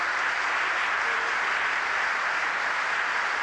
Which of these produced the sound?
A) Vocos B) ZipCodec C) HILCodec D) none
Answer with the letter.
D